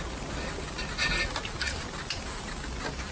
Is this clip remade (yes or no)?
no